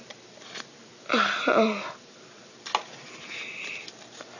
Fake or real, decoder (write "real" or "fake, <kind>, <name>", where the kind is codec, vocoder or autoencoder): real